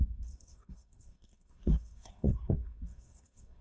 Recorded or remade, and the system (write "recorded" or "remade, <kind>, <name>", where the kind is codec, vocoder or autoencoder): remade, codec, SNAC